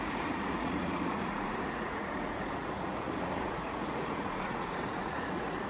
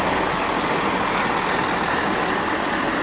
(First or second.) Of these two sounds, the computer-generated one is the first